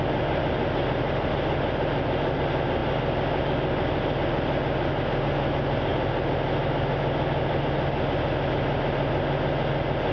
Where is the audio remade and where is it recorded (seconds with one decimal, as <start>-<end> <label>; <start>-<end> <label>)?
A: 0.0-10.1 recorded